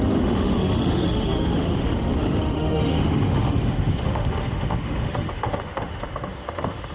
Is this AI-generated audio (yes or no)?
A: yes